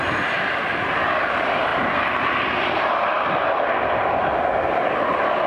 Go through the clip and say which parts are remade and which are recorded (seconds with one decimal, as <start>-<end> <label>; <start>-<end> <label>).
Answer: 0.0-5.5 recorded